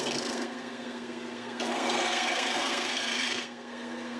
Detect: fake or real fake